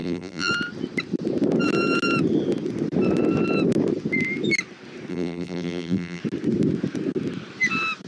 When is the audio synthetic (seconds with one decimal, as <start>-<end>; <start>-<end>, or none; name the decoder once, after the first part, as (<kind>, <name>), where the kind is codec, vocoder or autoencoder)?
0.0-0.5 (vocoder, BigVGAN v2); 5.1-6.2